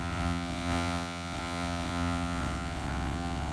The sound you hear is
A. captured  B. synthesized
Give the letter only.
B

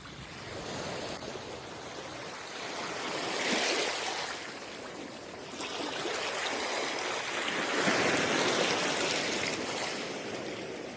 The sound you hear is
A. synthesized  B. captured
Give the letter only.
B